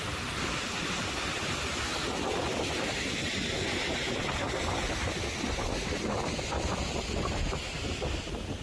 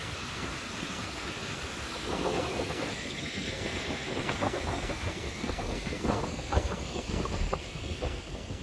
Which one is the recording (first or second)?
first